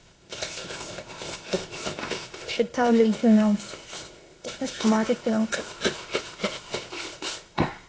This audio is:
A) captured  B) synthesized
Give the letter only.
B